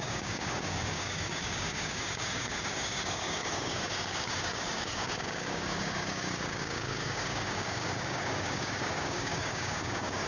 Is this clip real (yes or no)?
no